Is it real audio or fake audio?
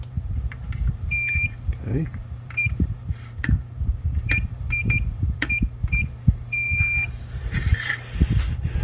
fake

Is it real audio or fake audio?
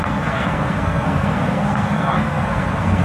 fake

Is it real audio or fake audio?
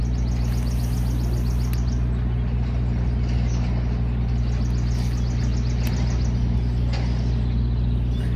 real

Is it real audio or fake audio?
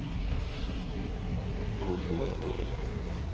fake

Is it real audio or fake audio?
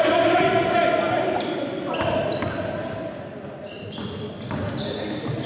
real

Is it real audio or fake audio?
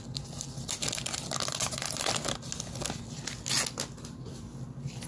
real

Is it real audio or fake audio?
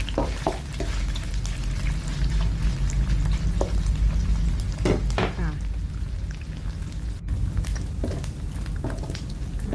real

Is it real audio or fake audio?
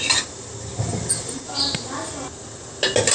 real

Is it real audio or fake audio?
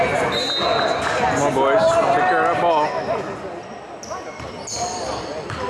real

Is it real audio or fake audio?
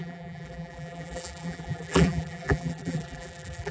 fake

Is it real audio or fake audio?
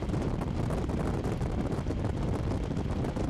real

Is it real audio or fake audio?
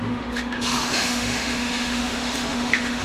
fake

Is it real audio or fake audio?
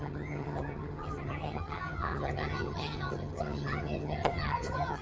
fake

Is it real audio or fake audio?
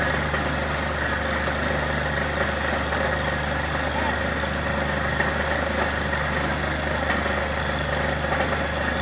real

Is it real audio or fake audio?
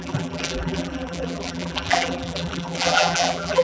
fake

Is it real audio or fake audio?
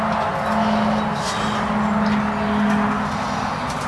real